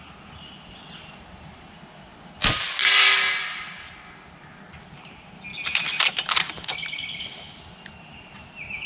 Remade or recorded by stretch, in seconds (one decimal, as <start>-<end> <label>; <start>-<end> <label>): 0.0-8.9 recorded